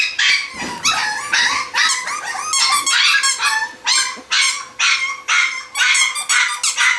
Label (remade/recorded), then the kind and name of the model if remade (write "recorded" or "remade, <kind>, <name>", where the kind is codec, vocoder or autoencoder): recorded